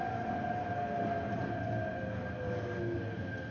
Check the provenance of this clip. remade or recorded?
recorded